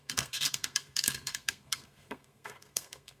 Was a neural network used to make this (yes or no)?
yes